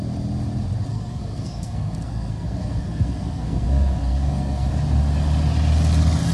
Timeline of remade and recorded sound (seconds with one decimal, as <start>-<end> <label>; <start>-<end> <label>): 0.0-0.9 recorded; 0.9-4.7 remade; 4.7-6.3 recorded